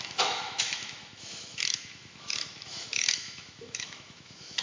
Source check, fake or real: fake